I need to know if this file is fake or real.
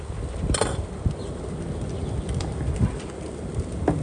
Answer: real